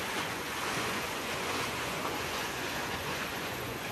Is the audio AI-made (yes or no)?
yes